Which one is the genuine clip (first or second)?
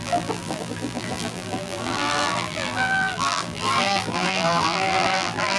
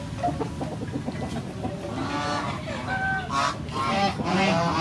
second